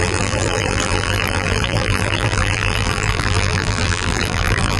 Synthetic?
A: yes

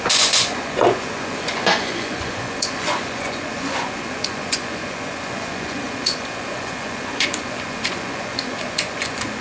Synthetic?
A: yes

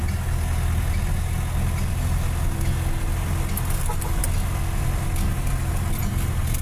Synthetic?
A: no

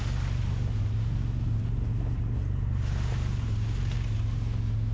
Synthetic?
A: no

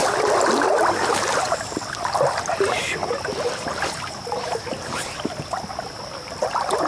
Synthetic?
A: no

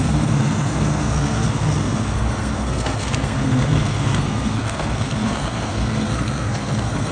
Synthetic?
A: yes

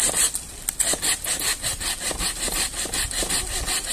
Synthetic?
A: no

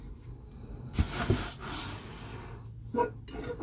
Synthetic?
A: no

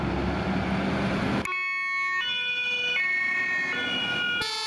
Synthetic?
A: no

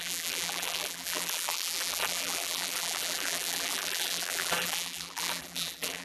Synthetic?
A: yes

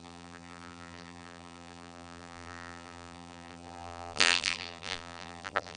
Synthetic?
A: yes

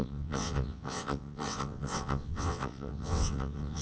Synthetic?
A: yes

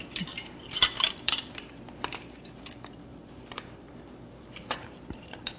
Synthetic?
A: yes